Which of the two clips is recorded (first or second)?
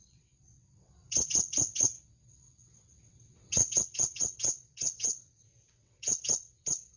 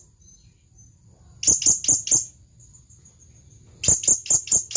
second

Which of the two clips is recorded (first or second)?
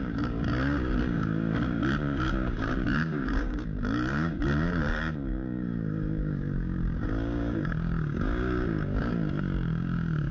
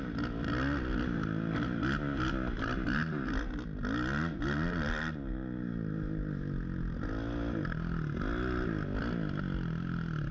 second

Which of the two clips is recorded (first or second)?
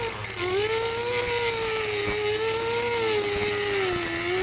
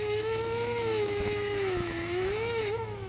first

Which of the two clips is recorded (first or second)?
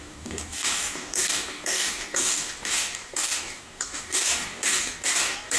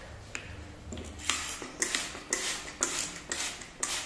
second